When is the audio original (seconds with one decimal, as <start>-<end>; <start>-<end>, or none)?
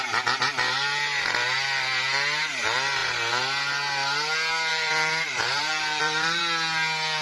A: 0.0-4.7; 6.4-7.2